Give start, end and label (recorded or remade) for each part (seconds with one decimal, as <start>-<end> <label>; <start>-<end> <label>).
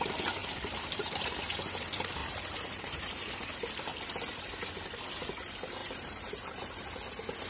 0.0-0.4 recorded; 0.4-1.3 remade; 1.3-2.2 recorded; 2.2-3.3 remade; 3.3-5.8 recorded; 5.8-6.9 remade; 6.9-7.5 recorded